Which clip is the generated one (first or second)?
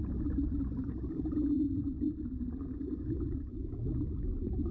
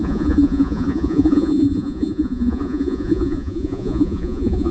second